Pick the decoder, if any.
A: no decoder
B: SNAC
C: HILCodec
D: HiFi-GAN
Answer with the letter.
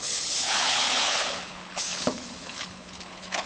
C